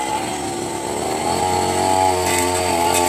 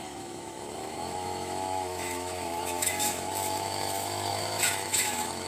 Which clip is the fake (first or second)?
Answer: second